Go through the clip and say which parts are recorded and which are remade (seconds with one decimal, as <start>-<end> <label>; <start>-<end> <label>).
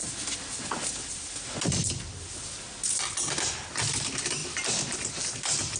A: 0.0-3.5 recorded; 3.5-4.4 remade; 4.4-5.8 recorded